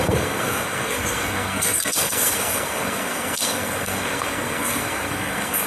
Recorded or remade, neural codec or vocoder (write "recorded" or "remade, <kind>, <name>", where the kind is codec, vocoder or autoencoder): remade, codec, SNAC